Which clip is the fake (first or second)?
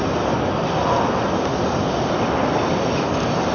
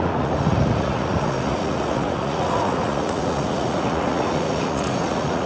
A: second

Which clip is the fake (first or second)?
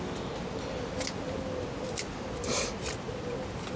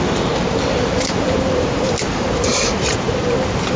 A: second